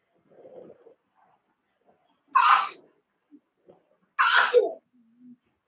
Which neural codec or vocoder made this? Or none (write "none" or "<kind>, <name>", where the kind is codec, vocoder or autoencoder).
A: none